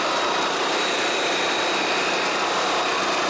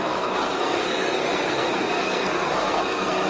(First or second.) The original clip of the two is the first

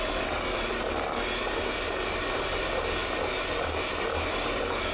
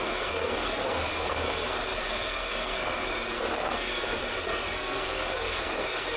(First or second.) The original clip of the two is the first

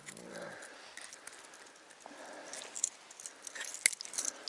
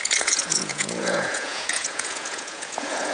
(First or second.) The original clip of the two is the first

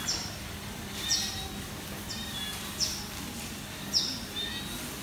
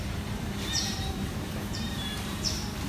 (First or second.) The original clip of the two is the first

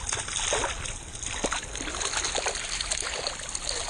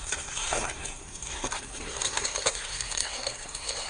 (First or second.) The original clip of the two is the first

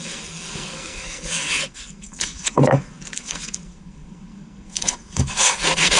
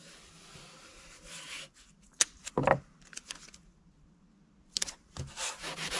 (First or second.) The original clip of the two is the second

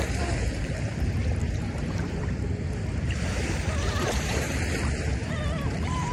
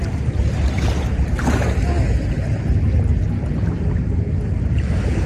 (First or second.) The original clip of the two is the second